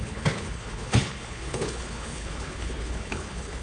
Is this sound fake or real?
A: fake